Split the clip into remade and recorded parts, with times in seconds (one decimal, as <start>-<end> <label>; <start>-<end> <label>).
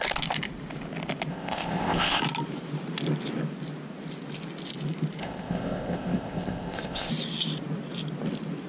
0.0-1.3 recorded; 1.3-2.2 remade; 2.2-5.2 recorded; 5.2-7.1 remade; 7.1-8.7 recorded